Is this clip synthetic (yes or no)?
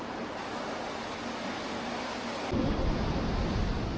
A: no